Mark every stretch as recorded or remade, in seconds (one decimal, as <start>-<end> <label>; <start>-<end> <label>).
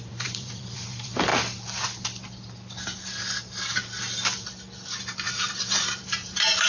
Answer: 0.0-1.3 remade; 1.3-5.3 recorded; 5.3-6.7 remade